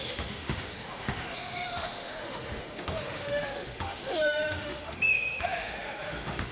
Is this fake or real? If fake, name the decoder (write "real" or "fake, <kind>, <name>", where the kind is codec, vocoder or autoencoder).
fake, autoencoder, DAC-VAE